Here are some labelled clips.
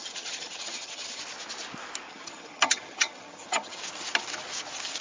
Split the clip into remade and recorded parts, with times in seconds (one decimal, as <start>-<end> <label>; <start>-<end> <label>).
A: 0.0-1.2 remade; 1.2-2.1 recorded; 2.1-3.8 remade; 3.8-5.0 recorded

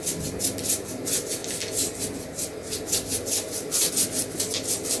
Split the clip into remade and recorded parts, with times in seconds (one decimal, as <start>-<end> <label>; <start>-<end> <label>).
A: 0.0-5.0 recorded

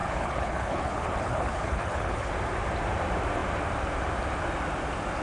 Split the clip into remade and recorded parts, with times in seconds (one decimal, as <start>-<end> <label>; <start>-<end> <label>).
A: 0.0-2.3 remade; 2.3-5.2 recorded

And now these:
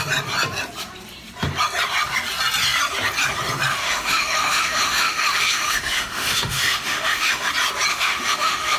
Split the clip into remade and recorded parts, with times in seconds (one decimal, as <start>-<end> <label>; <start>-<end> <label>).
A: 0.0-3.7 recorded; 3.7-7.5 remade; 7.5-7.9 recorded; 7.9-8.8 remade

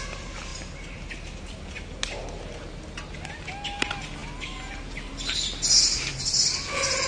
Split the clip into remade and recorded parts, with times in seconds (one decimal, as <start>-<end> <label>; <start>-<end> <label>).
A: 0.0-7.1 recorded

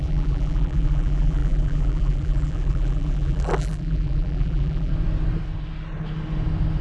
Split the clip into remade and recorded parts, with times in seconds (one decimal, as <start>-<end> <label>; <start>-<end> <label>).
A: 0.0-4.9 remade; 4.9-6.8 recorded